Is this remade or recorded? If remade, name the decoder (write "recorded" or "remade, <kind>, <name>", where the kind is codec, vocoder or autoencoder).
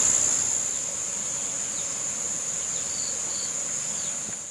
recorded